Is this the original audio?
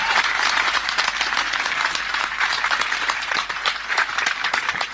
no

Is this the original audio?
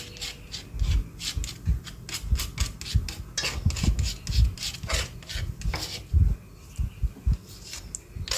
yes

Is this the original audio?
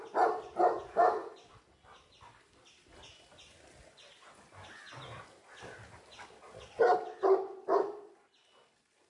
yes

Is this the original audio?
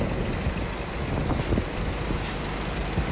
yes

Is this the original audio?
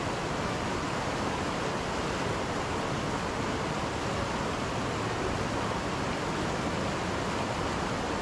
yes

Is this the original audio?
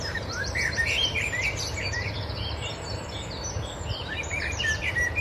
no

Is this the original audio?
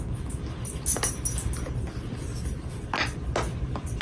yes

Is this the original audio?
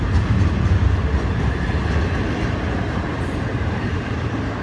yes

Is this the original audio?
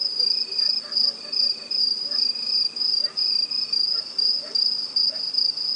yes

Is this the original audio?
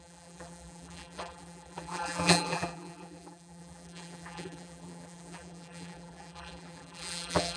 no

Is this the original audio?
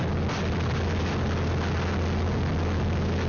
yes